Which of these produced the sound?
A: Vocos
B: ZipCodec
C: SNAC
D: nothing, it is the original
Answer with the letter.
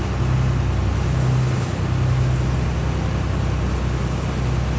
D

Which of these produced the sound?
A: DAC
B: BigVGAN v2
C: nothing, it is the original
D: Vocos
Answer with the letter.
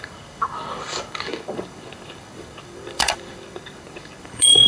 A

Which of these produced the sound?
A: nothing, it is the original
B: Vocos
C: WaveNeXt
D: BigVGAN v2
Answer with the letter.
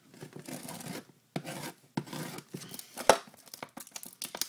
A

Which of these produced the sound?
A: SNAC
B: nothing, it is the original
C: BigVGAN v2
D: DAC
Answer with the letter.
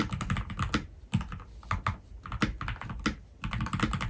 B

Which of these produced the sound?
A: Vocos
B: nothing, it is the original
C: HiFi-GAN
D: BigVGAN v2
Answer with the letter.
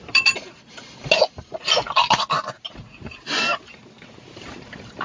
B